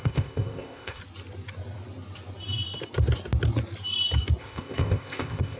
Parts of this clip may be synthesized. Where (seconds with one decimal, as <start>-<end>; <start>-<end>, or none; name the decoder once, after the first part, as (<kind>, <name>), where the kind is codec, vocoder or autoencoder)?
0.0-1.0 (codec, ZipCodec); 4.4-5.6